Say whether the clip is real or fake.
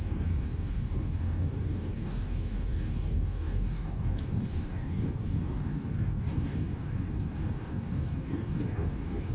fake